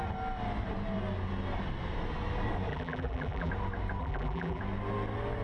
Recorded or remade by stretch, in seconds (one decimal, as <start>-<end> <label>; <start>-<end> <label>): 0.0-2.7 recorded; 2.7-3.5 remade; 3.5-4.0 recorded; 4.0-4.6 remade; 4.6-5.4 recorded